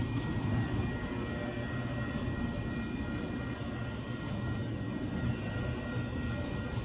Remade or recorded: recorded